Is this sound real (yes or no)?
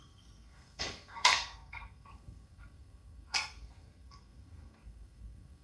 no